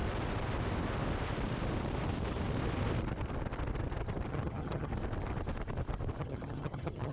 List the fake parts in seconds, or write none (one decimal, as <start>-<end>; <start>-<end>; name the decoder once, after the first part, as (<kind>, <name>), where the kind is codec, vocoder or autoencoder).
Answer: 4.3-4.9 (vocoder, HiFi-GAN); 6.2-7.1